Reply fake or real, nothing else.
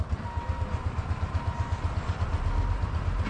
real